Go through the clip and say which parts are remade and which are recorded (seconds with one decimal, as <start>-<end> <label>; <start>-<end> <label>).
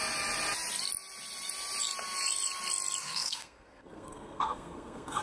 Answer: 0.0-3.0 recorded; 3.0-5.2 remade